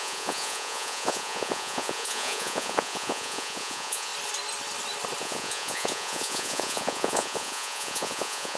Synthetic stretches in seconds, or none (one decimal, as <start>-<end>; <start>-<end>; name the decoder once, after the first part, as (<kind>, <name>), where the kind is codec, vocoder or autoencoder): 0.0-4.1 (vocoder, Vocos); 5.2-8.6